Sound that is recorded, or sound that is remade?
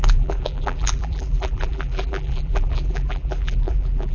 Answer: remade